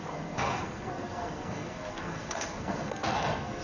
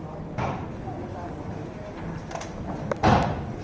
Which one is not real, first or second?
first